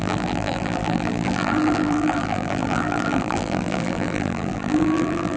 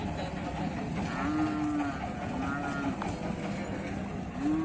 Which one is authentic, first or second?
second